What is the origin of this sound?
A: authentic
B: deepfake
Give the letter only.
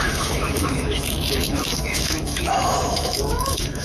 B